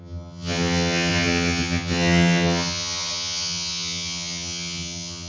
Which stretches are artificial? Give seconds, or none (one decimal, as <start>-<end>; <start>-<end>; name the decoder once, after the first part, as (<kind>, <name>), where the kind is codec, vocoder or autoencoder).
0.0-5.3 (vocoder, HiFi-GAN)